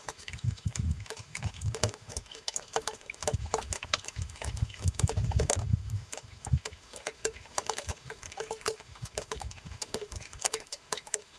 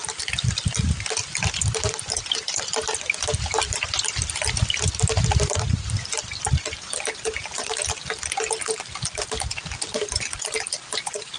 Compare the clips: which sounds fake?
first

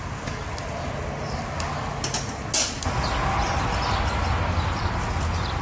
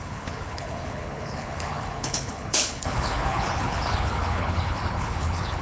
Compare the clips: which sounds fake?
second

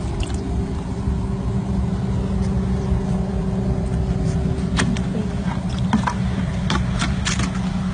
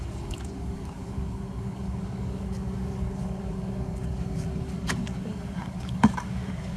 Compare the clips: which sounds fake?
second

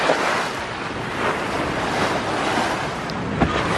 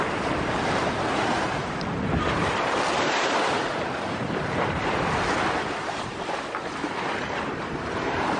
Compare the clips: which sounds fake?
second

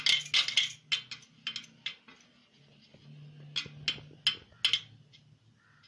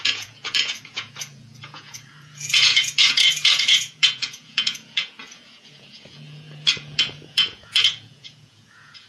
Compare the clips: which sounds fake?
second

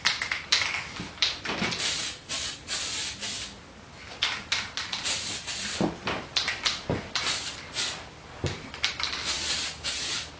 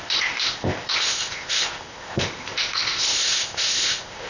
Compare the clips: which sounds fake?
second